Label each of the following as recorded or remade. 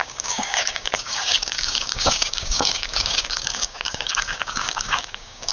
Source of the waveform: remade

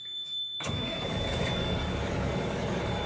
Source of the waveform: remade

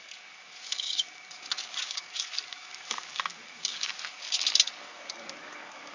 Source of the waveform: remade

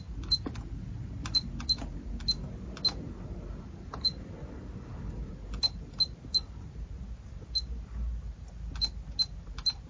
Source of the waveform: recorded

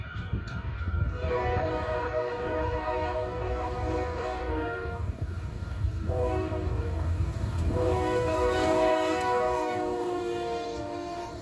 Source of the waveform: remade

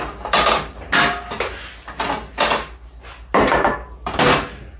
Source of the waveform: recorded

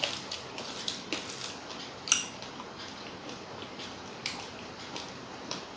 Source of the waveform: recorded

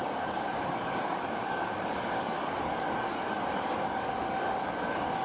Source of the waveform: remade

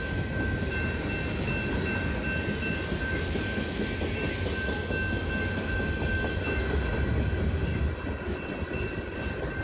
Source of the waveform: recorded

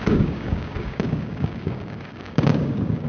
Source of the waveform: remade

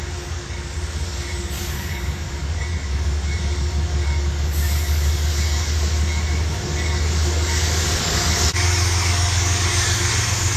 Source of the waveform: remade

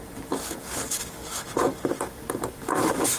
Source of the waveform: remade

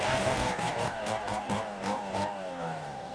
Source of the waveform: remade